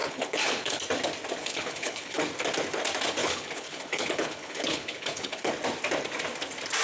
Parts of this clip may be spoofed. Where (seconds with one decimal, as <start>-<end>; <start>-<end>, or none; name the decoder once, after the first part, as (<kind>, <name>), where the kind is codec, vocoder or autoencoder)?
0.0-0.8 (codec, HILCodec); 1.4-2.2; 3.2-5.5